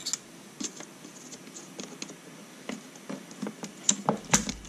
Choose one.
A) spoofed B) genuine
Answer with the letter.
B